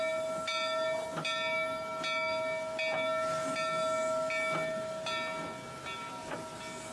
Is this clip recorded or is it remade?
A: recorded